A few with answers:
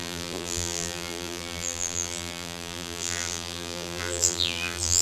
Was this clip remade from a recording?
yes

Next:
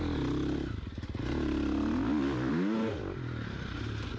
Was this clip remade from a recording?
no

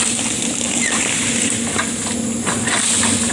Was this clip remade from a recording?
no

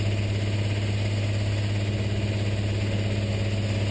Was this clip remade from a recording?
no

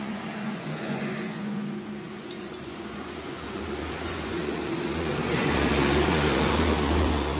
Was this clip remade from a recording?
yes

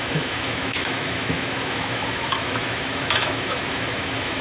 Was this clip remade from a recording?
yes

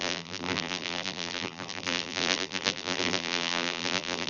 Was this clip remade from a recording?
yes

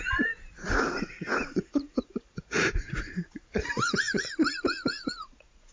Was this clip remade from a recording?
yes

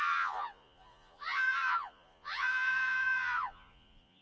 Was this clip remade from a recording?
yes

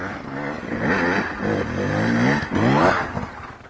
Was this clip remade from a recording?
no